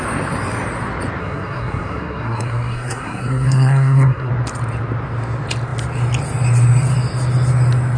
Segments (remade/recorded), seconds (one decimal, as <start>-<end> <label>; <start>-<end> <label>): 0.0-1.2 recorded; 1.2-4.3 remade; 4.3-8.0 recorded